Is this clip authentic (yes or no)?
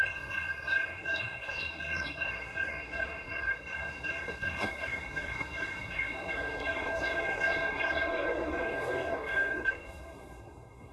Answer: no